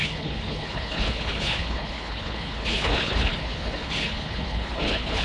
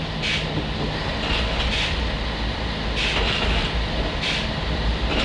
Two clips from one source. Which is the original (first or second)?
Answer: second